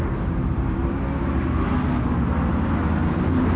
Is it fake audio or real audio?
real